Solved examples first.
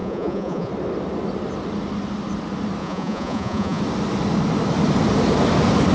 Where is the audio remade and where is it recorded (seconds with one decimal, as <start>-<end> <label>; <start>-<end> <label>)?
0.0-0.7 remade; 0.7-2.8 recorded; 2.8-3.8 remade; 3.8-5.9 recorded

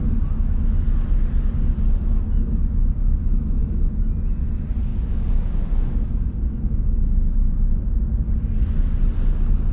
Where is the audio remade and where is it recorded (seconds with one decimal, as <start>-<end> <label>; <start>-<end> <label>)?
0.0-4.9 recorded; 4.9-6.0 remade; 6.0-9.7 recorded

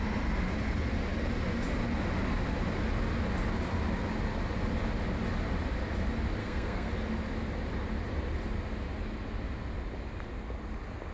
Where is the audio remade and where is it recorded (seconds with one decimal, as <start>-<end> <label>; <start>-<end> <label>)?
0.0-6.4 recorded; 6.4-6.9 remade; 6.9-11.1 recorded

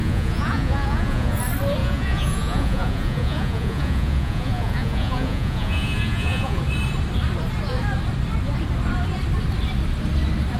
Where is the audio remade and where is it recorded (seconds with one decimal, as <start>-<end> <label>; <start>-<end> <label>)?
0.0-1.4 remade; 1.4-1.8 recorded; 1.8-6.6 remade; 6.6-10.6 recorded

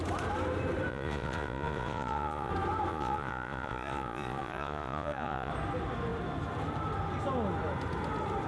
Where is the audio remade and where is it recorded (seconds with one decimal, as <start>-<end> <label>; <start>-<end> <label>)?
0.0-0.9 recorded; 0.9-2.5 remade; 2.5-2.9 recorded; 2.9-5.5 remade; 5.5-8.5 recorded

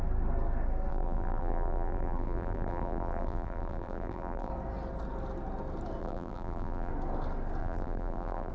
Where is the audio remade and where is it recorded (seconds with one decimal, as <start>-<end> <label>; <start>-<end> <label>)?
0.0-0.9 recorded; 0.9-4.5 remade; 4.5-6.0 recorded; 6.0-6.9 remade; 6.9-7.6 recorded; 7.6-8.5 remade

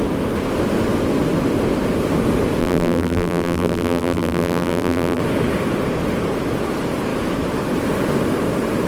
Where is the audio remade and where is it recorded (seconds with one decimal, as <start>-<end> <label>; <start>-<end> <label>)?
0.0-2.6 recorded; 2.6-5.2 remade; 5.2-8.9 recorded